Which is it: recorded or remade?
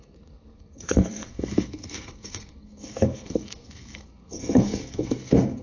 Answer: remade